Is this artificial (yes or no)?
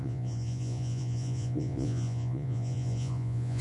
yes